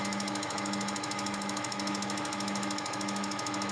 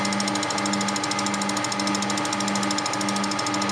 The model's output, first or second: first